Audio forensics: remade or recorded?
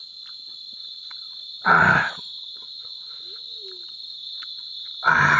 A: recorded